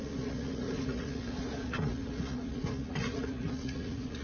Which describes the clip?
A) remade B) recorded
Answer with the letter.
A